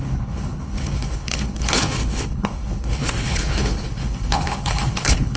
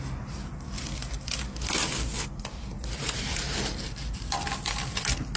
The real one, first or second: second